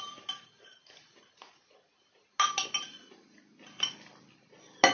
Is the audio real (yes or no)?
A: yes